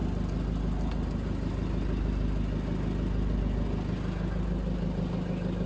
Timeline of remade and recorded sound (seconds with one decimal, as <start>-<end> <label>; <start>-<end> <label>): 0.0-5.7 recorded